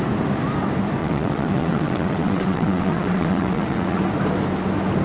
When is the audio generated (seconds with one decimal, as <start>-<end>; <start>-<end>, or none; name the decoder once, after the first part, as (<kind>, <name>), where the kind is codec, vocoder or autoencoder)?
1.0-4.0 (vocoder, WaveNeXt)